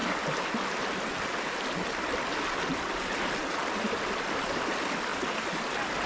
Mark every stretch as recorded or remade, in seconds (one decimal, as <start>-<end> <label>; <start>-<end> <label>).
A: 0.0-6.1 recorded

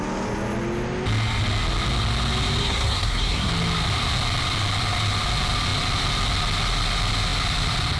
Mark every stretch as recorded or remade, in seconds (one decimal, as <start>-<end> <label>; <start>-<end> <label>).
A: 0.0-2.6 recorded; 2.6-3.5 remade; 3.5-8.0 recorded